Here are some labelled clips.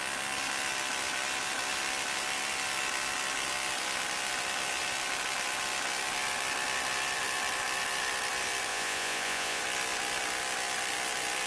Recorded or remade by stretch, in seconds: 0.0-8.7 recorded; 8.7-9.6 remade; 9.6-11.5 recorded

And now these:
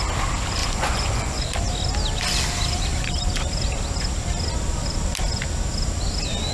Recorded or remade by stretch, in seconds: 0.0-0.6 recorded; 0.6-1.4 remade; 1.4-6.5 recorded

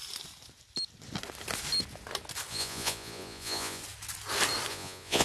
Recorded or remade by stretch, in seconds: 0.0-2.5 recorded; 2.5-3.8 remade; 3.8-4.7 recorded; 4.7-5.2 remade